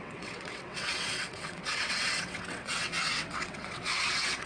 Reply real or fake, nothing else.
fake